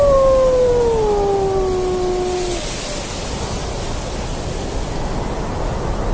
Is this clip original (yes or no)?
yes